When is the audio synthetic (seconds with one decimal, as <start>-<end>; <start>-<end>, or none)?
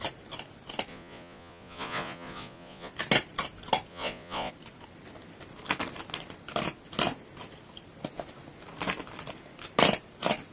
0.9-2.9; 3.9-4.5